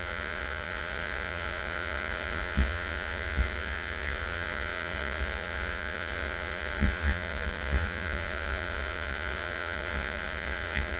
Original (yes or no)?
no